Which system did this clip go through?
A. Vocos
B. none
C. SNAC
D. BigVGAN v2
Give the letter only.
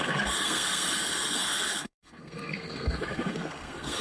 C